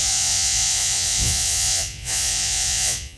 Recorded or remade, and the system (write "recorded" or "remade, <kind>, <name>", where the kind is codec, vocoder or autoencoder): remade, vocoder, Vocos